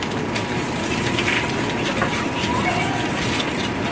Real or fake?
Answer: real